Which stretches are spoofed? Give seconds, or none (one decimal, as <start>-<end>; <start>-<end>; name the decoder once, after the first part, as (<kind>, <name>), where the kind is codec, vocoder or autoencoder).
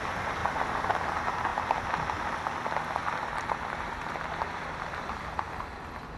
0.4-1.1 (vocoder, BigVGAN v2); 3.0-5.5